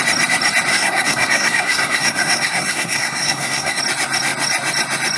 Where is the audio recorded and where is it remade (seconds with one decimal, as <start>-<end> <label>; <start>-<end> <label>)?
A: 0.0-0.7 recorded; 0.7-3.8 remade; 3.8-5.2 recorded